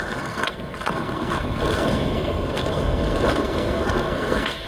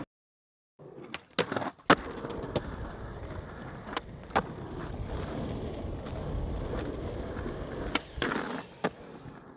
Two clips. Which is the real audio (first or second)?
second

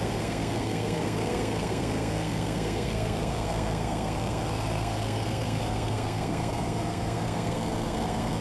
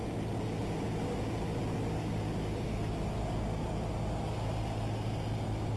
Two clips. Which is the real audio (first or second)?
second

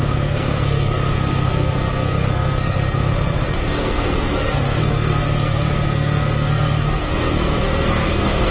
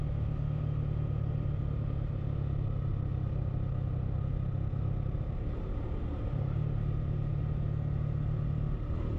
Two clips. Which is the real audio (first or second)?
second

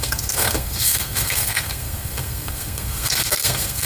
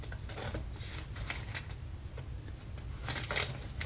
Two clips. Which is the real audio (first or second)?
second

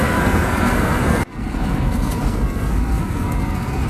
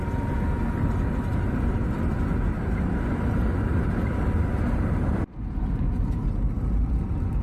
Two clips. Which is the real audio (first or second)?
second